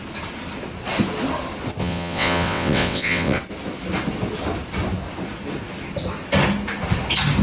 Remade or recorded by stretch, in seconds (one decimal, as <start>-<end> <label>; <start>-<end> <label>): 0.0-1.8 recorded; 1.8-3.4 remade; 3.4-7.4 recorded